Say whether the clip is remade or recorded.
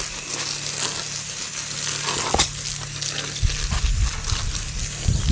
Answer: recorded